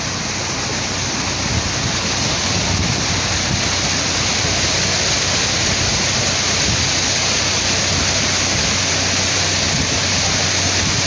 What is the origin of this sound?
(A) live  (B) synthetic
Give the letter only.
A